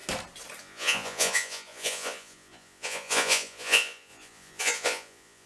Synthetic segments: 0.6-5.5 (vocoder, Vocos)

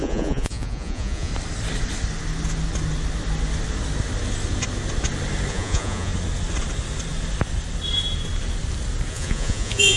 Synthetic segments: 0.0-1.3 (vocoder, Vocos); 5.5-6.1; 9.1-10.0

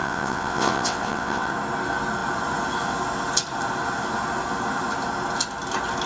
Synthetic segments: 0.0-1.5 (vocoder, WaveNeXt)

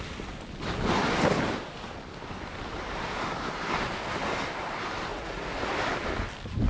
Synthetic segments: 5.1-5.6 (vocoder, Vocos)